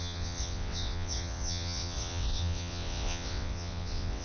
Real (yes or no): no